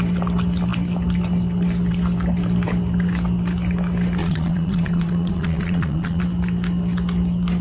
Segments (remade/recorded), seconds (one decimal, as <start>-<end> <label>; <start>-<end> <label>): 0.0-4.2 recorded; 4.2-6.2 remade; 6.2-7.6 recorded

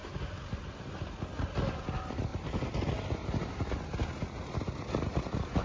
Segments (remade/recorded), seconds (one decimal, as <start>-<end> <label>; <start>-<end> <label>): 0.0-5.6 recorded

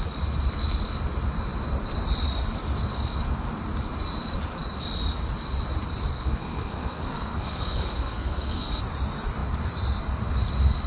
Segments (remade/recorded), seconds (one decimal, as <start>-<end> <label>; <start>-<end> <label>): 0.0-6.1 recorded; 6.1-8.8 remade; 8.8-10.9 recorded

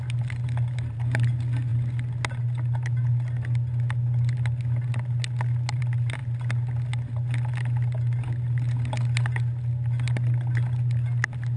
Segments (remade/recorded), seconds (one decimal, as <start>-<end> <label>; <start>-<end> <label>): 0.0-11.6 recorded

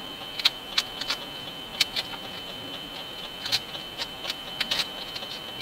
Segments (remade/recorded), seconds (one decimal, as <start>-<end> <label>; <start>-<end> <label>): 0.0-5.6 recorded